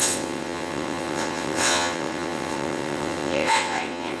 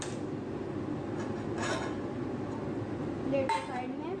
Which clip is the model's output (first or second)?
first